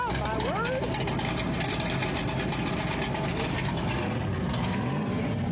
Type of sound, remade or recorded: recorded